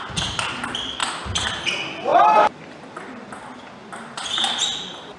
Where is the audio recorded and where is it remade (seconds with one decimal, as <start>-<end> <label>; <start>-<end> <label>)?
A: 0.0-2.1 recorded; 2.1-3.3 remade; 3.3-3.8 recorded; 3.8-4.5 remade; 4.5-5.2 recorded